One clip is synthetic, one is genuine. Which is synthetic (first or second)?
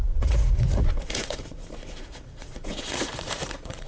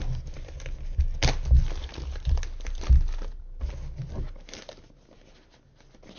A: first